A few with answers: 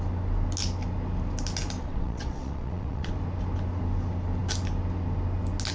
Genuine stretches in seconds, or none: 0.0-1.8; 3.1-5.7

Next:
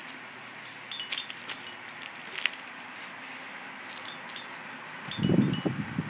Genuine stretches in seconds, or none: 0.0-6.1

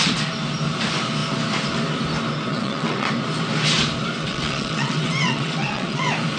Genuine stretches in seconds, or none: 0.0-2.5; 3.1-4.2; 6.0-6.4